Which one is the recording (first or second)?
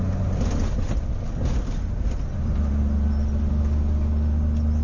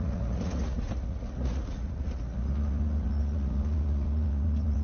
first